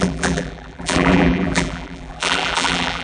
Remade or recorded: remade